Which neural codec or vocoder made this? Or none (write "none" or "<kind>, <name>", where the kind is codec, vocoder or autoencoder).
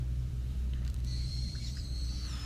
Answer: vocoder, BigVGAN v2